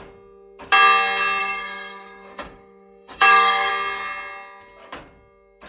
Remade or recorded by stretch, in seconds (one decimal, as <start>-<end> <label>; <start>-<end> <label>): 0.0-1.4 recorded; 1.4-3.7 remade; 3.7-5.7 recorded